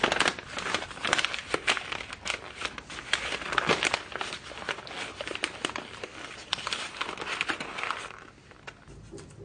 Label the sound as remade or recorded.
recorded